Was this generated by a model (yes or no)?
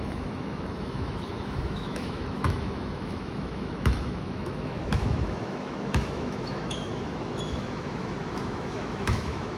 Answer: yes